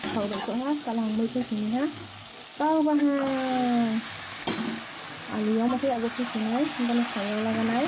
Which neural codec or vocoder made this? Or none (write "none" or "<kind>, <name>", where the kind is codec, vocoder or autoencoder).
none